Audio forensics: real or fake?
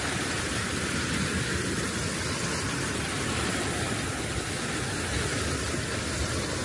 real